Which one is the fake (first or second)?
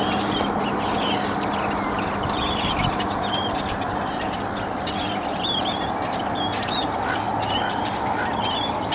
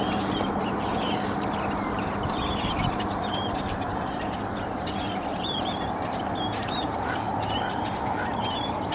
second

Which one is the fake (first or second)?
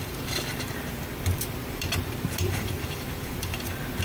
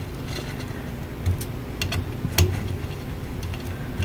first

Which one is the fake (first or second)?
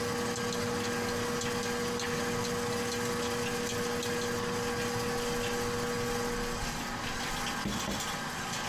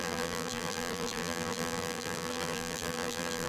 second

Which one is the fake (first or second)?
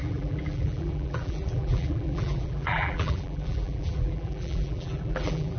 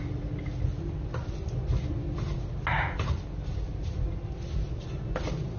first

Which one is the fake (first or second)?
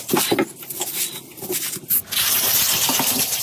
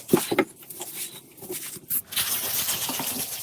second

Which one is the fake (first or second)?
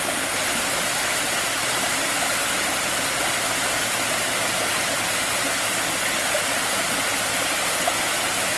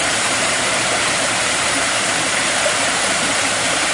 second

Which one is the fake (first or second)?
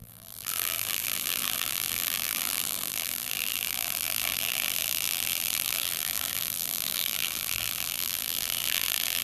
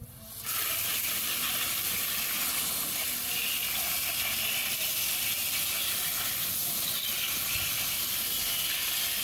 first